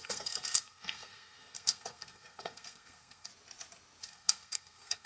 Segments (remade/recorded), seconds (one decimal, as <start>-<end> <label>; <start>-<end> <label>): 0.0-3.3 remade; 3.3-4.0 recorded; 4.0-5.1 remade